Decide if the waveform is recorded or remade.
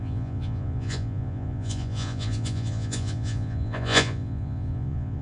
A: remade